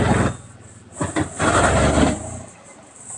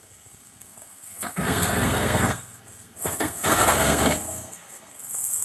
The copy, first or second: second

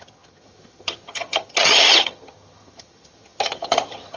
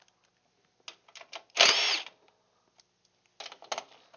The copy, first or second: first